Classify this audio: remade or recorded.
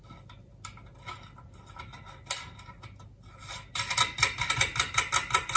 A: recorded